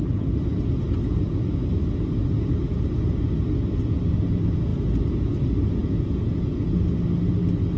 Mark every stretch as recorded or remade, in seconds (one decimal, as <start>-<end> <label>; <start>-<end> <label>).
0.0-5.8 recorded; 5.8-6.7 remade; 6.7-7.8 recorded